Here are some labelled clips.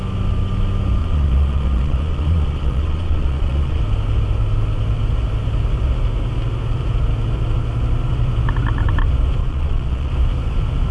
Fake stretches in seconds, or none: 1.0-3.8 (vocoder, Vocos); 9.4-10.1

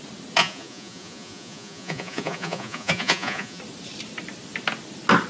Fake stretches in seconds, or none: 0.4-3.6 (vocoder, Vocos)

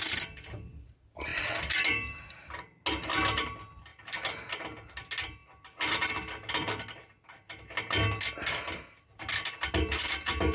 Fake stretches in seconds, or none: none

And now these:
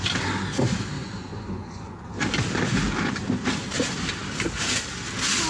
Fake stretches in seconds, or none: 1.0-2.0 (vocoder, Vocos)